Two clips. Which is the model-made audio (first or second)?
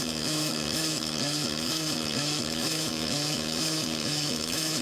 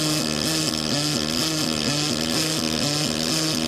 first